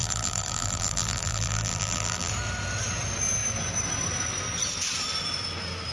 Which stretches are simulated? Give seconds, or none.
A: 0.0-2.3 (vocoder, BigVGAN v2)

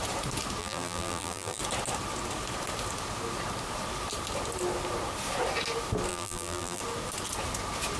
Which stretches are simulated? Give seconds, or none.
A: 0.6-1.6 (vocoder, BigVGAN v2); 6.1-6.8

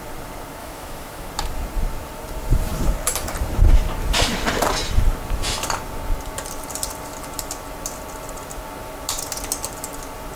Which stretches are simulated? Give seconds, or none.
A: 0.6-1.3 (autoencoder, DAC-VAE)

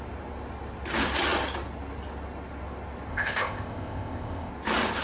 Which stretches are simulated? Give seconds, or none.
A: 3.1-4.5 (codec, ZipCodec)

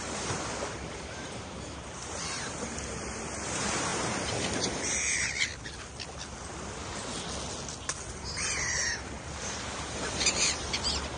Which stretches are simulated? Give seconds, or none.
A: 0.0-3.9 (vocoder, BigVGAN v2); 4.6-5.5; 8.1-11.2

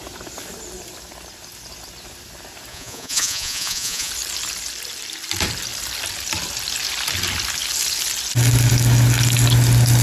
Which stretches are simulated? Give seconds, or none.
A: 2.7-4.1 (vocoder, Vocos)

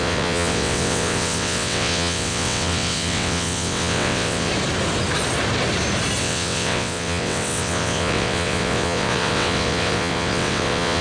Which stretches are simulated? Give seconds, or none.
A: 0.0-4.5 (vocoder, WaveNeXt); 6.2-11.0

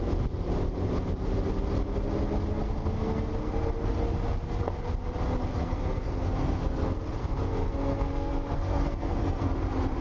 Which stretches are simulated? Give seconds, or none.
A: 2.6-3.9 (codec, SNAC); 5.5-9.5